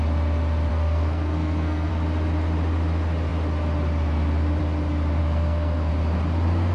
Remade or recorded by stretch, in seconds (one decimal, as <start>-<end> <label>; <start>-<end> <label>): 0.0-0.7 recorded; 0.7-1.9 remade; 1.9-5.2 recorded; 5.2-5.9 remade; 5.9-6.7 recorded